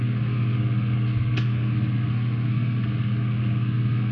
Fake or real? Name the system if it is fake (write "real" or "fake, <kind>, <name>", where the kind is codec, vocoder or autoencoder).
fake, codec, SNAC